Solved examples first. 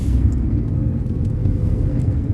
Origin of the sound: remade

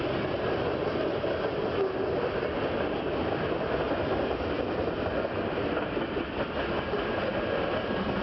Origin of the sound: recorded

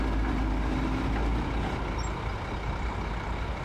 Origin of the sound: recorded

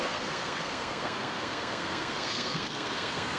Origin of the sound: remade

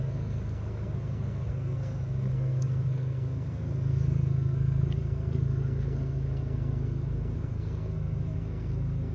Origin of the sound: remade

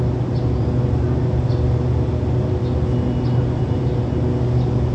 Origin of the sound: recorded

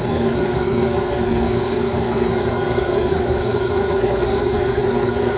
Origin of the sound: remade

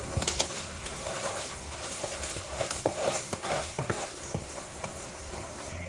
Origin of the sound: remade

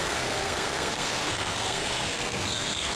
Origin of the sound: remade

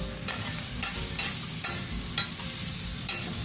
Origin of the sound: recorded